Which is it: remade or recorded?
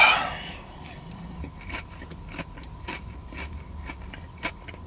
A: recorded